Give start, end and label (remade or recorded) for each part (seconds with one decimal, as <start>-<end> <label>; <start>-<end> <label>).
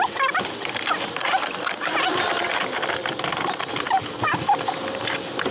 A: 0.0-1.2 recorded; 1.2-2.5 remade; 2.5-5.5 recorded